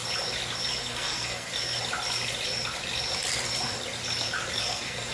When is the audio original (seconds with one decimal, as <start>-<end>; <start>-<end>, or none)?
0.0-0.8; 1.5-4.6